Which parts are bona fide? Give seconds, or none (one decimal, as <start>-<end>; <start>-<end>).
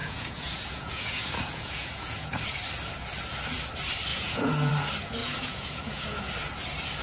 2.4-4.1; 4.7-5.2; 6.3-7.0